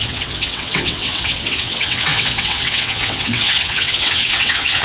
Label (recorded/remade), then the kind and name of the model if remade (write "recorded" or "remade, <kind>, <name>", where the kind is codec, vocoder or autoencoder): remade, vocoder, WaveNeXt